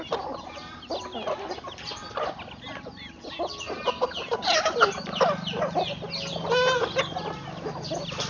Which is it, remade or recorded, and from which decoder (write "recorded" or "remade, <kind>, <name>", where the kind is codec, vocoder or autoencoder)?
recorded